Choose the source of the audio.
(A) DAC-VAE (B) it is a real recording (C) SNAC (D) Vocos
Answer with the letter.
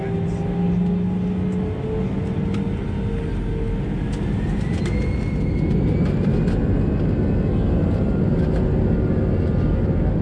B